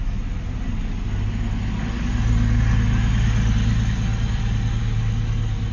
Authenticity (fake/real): real